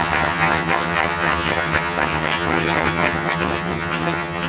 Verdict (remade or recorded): remade